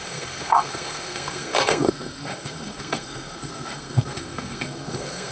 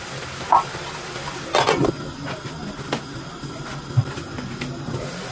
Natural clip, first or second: second